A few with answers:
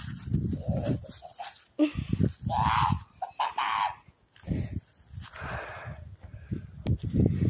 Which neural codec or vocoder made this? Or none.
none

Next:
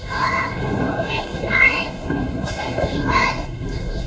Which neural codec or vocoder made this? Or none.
codec, SNAC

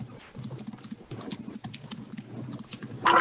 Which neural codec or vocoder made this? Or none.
none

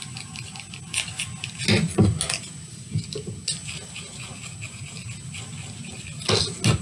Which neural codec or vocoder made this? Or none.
none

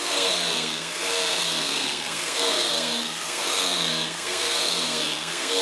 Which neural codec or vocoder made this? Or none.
codec, SNAC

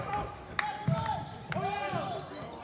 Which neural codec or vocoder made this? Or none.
none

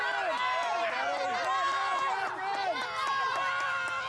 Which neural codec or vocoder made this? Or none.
none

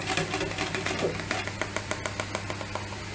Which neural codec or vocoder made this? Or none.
none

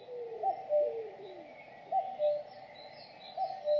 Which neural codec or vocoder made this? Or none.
none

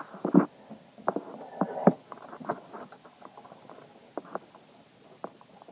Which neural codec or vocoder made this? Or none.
none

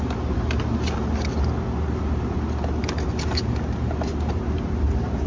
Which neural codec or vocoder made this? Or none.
none